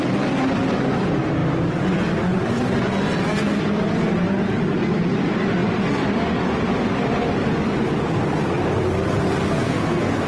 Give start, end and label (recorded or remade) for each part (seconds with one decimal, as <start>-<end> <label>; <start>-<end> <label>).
0.0-9.5 recorded; 9.5-10.3 remade